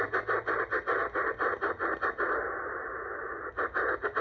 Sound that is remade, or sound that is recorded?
recorded